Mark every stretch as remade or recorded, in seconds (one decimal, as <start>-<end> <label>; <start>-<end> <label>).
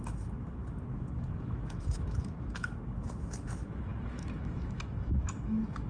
0.0-5.9 remade